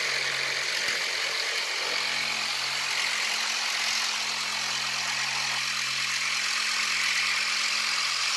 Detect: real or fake real